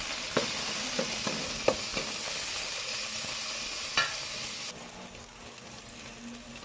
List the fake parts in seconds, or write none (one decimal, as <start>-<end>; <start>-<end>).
none